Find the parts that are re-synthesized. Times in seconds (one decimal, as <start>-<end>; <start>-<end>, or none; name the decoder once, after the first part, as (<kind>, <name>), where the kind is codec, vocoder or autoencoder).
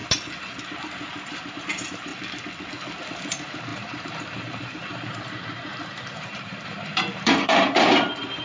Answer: 0.6-2.1 (vocoder, BigVGAN v2); 3.0-8.4